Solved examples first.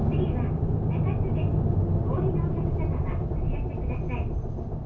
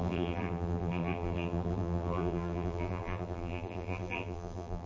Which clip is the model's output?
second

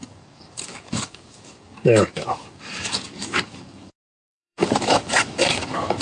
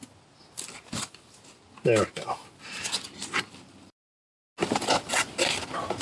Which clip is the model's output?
first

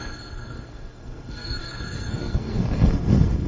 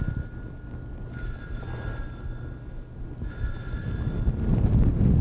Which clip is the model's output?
first